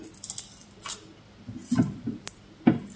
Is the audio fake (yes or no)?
no